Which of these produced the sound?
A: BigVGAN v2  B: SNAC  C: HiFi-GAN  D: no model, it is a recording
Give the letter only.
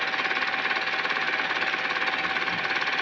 D